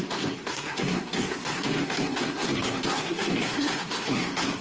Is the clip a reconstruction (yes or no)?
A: yes